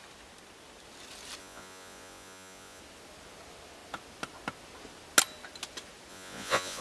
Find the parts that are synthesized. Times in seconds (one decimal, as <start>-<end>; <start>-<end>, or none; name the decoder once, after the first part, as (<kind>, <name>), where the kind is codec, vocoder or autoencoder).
1.4-2.8 (vocoder, Vocos); 6.1-6.8